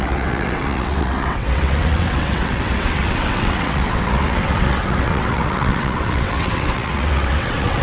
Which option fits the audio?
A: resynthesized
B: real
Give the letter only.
A